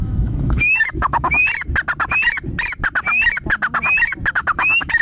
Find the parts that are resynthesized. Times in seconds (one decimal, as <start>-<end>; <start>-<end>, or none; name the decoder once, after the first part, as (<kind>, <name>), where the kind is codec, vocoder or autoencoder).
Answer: 0.0-1.4 (autoencoder, DAC-VAE); 4.3-5.0